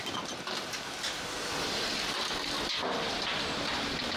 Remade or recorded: recorded